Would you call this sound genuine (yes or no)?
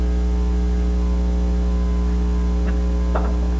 yes